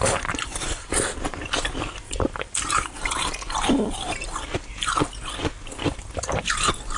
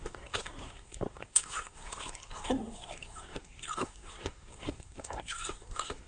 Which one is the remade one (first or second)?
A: second